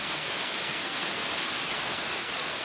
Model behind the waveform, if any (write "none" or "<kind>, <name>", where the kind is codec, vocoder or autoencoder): codec, SNAC